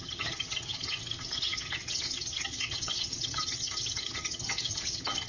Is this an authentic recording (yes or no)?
no